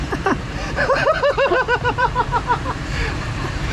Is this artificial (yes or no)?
yes